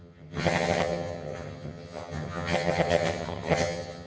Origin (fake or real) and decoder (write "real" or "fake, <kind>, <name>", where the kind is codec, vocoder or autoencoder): fake, vocoder, HiFi-GAN